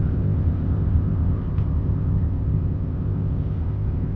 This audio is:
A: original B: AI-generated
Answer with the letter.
B